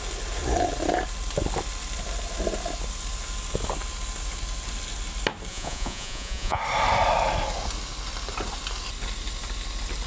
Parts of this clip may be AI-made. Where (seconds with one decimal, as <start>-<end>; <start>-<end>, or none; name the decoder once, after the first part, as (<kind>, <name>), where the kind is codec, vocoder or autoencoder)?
5.5-6.6 (vocoder, Vocos)